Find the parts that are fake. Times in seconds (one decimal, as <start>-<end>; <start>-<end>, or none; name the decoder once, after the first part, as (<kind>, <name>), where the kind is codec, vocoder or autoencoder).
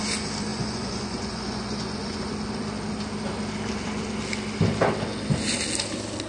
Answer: 0.5-2.3 (vocoder, Vocos)